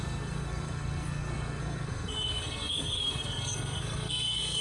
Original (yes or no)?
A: no